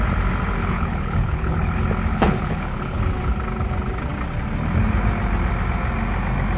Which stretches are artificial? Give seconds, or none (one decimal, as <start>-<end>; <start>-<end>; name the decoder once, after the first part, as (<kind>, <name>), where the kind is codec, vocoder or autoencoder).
0.6-1.7 (codec, HILCodec); 2.1-3.0